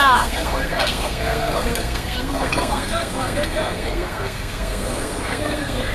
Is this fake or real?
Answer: fake